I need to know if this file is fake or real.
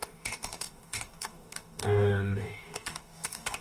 fake